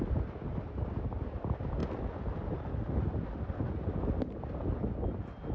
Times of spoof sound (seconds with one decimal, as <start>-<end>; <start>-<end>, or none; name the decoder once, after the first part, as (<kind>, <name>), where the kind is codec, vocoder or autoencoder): none